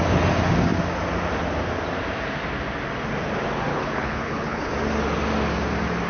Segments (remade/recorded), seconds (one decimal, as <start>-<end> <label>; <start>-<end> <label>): 0.0-3.7 recorded; 3.7-4.7 remade; 4.7-6.1 recorded

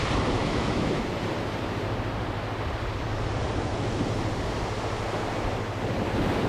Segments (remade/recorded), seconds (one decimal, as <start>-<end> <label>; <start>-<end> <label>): 0.0-0.4 recorded; 0.4-1.0 remade; 1.0-6.5 recorded